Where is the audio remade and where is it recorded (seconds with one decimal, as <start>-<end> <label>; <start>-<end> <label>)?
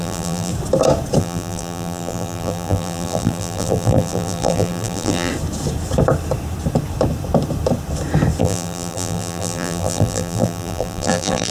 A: 0.0-0.5 remade; 0.5-1.2 recorded; 1.2-5.3 remade; 5.3-8.4 recorded; 8.4-11.5 remade